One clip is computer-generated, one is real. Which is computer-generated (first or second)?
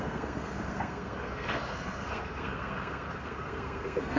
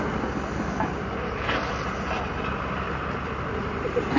first